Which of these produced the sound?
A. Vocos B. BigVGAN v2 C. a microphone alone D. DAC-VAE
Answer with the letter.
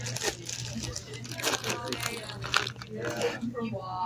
C